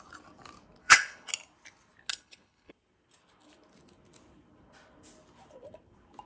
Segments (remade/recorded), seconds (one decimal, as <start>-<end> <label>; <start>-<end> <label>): 0.0-0.8 recorded; 0.8-1.3 remade; 1.3-2.1 recorded; 2.1-2.7 remade; 2.7-6.3 recorded